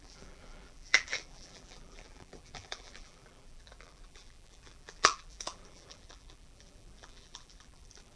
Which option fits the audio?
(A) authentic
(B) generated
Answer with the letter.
B